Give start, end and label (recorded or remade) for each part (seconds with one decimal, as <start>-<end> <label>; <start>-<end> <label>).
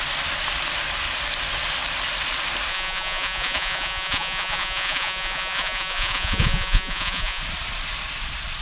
0.0-2.7 recorded; 2.7-7.4 remade; 7.4-8.6 recorded